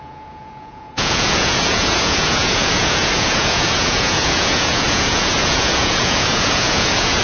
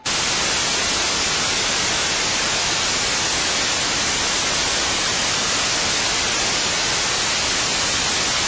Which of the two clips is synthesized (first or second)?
first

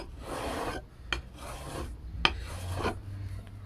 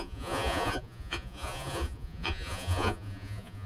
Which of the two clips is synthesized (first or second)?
second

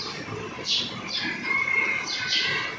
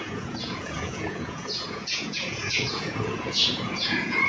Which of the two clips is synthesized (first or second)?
second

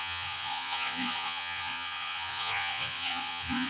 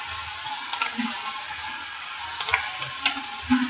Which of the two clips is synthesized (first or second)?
first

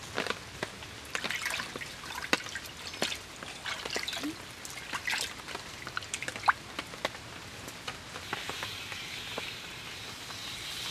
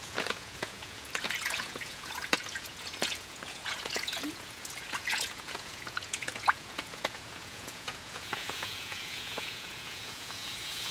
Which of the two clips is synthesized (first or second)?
second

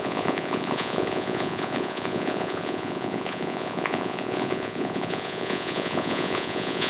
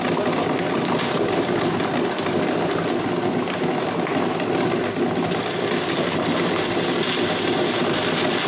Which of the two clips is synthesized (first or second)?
first